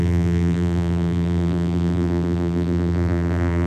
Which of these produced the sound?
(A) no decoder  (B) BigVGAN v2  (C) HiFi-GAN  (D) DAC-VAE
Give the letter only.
B